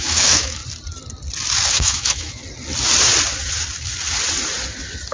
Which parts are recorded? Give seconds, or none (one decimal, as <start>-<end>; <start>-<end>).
0.6-1.7; 2.4-5.1